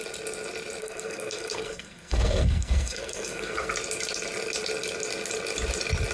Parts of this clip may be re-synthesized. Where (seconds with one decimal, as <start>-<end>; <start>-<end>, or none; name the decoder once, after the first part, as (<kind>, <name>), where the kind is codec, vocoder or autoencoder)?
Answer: 0.8-3.7 (codec, SNAC)